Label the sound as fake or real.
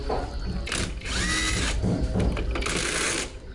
real